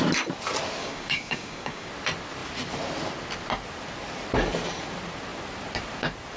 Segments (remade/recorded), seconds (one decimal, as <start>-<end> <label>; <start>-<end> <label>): 0.0-0.8 recorded; 0.8-1.9 remade; 1.9-6.4 recorded